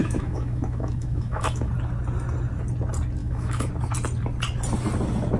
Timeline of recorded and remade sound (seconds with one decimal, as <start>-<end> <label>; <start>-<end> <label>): 0.0-1.7 remade; 1.7-3.2 recorded; 3.2-3.7 remade; 3.7-5.4 recorded